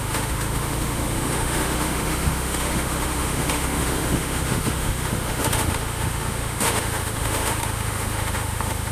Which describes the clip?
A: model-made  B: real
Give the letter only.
A